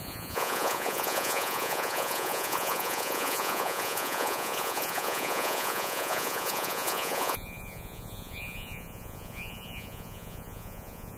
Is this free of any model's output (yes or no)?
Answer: no